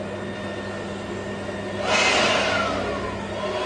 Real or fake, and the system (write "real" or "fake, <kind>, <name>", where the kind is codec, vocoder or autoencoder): real